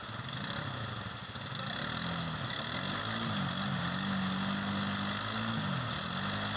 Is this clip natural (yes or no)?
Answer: yes